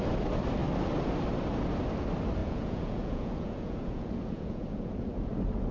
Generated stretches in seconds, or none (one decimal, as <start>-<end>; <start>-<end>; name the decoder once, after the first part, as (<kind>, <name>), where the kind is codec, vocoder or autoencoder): 2.4-5.3 (vocoder, Vocos)